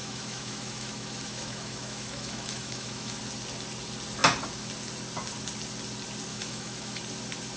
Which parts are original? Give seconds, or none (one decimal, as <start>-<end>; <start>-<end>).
3.2-6.3; 7.0-7.6